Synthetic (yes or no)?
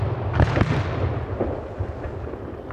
no